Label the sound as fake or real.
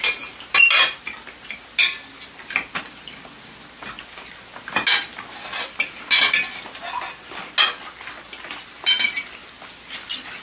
real